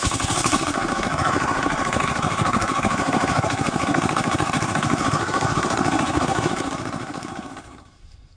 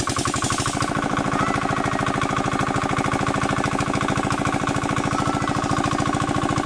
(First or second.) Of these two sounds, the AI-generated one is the first